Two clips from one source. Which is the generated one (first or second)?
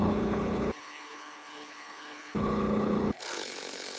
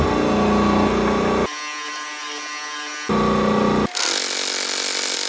first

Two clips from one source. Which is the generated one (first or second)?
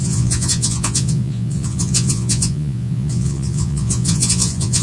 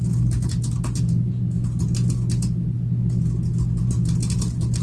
first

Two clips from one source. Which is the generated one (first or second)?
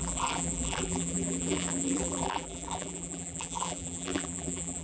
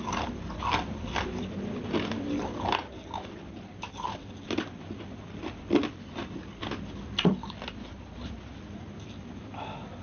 first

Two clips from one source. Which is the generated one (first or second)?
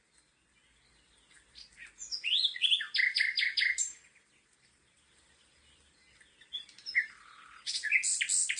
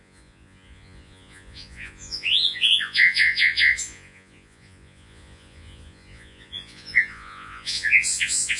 second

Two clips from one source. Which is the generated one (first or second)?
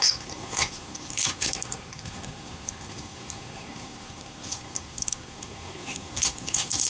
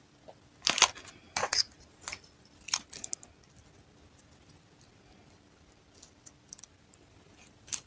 first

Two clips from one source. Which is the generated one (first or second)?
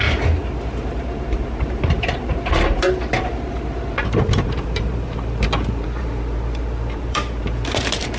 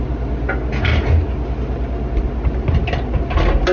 first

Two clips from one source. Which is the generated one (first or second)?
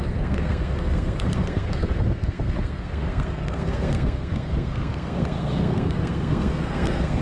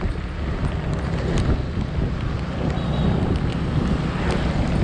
first